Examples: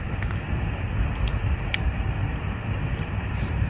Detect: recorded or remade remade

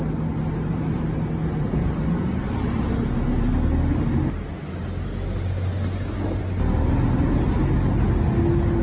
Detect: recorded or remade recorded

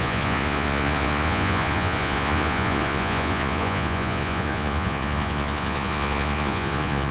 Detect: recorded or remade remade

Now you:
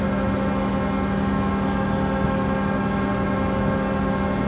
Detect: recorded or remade recorded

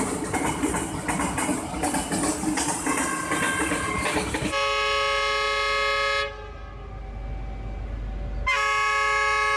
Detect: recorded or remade recorded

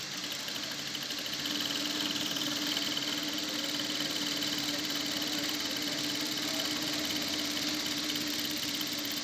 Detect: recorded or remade recorded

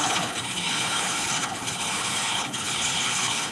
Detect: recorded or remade remade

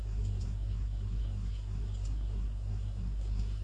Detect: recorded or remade remade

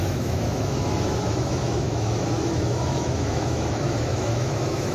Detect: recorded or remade remade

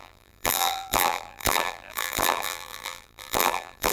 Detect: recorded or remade remade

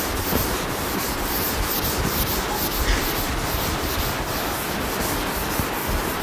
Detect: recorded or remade recorded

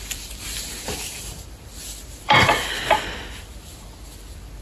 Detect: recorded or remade remade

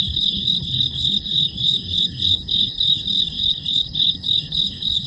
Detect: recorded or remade remade